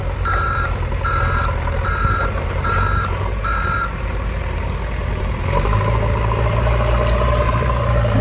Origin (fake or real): fake